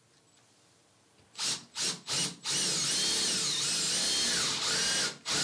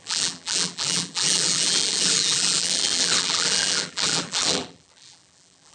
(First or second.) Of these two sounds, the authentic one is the first